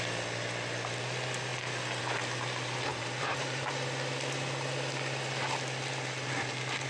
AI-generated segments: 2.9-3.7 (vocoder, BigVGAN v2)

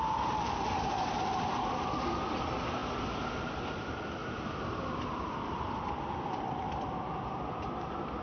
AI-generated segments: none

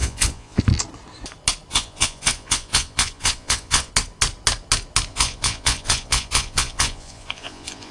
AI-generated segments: 0.0-0.6 (vocoder, Vocos); 1.7-3.9; 5.1-7.9